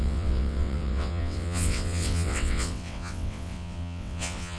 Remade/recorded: remade